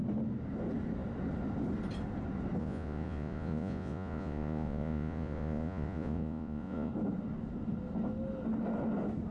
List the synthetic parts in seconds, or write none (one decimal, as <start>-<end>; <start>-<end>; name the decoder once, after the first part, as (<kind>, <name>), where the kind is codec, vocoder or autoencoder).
2.6-6.9 (vocoder, Vocos)